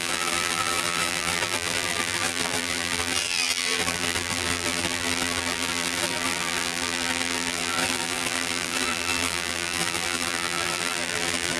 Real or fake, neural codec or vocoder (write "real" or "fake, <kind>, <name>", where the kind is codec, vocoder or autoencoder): fake, vocoder, BigVGAN v2